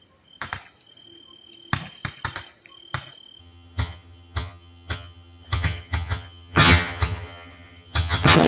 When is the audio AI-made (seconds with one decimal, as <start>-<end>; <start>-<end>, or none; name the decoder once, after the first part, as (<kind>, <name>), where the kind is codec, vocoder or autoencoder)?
3.4-8.5 (vocoder, HiFi-GAN)